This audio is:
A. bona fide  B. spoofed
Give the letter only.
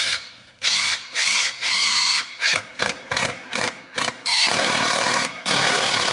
B